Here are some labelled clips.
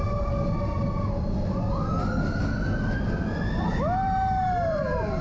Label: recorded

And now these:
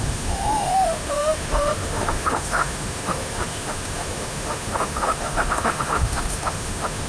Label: remade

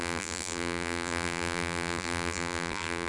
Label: remade